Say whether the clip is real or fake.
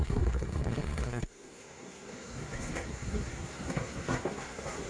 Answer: fake